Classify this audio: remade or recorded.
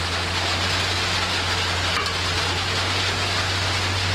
recorded